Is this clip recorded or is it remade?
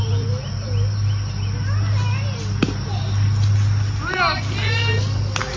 recorded